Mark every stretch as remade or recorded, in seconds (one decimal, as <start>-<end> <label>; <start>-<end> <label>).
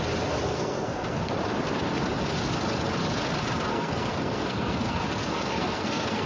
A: 0.0-0.5 recorded; 0.5-1.3 remade; 1.3-3.7 recorded; 3.7-6.3 remade